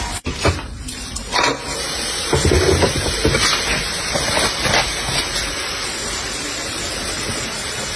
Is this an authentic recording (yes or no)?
yes